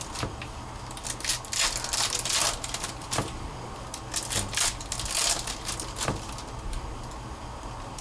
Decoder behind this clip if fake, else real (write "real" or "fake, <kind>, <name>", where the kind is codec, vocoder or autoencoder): real